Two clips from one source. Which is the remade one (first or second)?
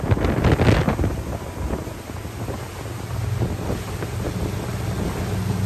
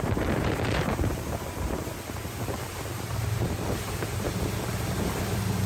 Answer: second